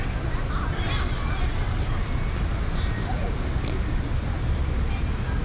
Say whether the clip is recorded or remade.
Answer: remade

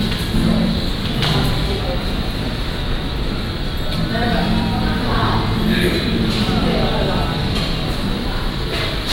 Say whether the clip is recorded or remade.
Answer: remade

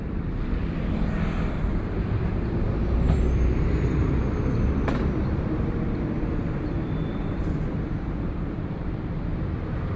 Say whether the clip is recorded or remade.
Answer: remade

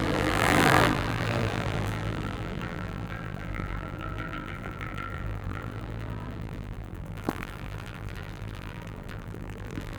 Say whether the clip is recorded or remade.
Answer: remade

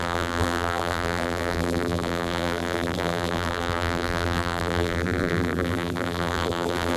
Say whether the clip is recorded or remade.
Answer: remade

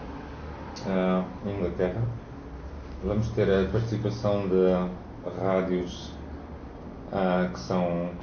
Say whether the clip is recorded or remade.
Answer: recorded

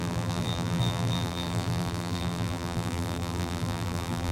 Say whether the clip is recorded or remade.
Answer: remade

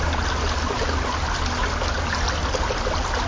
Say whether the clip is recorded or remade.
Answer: recorded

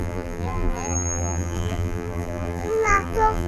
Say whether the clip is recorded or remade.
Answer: remade